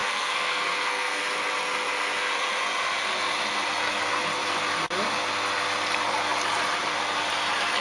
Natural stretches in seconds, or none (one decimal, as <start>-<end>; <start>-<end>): 1.2-7.8

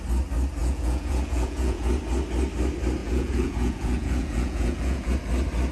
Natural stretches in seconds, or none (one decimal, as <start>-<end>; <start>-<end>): 0.0-0.6; 1.9-3.0; 5.1-5.7

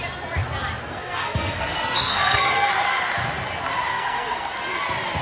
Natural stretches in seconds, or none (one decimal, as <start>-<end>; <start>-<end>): 0.0-0.8; 2.7-3.9; 4.5-5.2